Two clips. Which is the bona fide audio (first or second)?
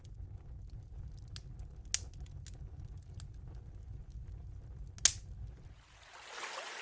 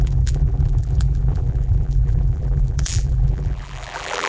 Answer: first